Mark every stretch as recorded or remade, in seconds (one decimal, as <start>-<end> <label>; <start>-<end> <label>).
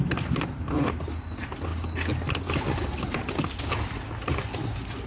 0.0-5.1 recorded